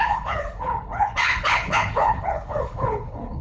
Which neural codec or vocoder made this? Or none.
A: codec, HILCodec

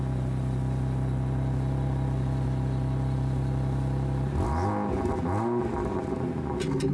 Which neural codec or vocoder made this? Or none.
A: none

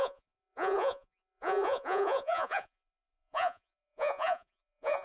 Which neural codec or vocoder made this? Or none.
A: vocoder, Vocos